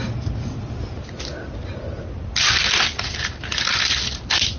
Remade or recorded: recorded